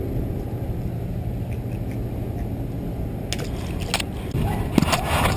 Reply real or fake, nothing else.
real